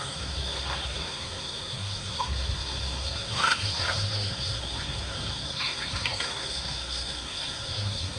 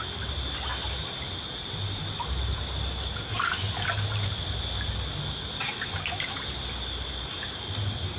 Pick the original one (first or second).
second